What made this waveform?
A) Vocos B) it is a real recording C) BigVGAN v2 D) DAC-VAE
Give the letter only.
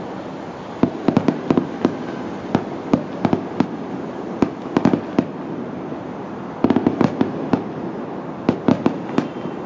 B